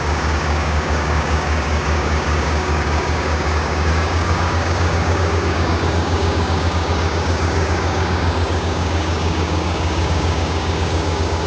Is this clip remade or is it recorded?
remade